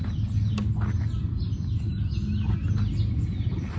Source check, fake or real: real